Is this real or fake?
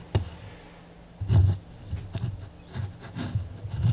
real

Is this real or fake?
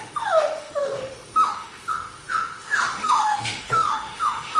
fake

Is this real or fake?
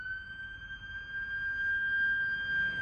real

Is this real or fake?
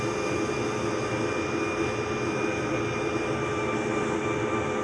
real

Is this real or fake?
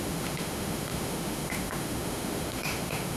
fake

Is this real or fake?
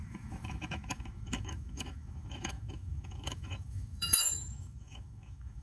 fake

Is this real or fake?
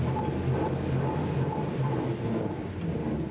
real